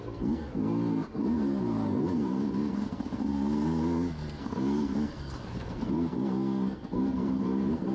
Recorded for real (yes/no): no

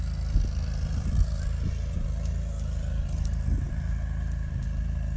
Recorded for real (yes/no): yes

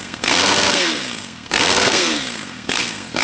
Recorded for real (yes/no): no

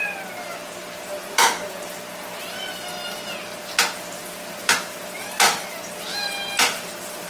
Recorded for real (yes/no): yes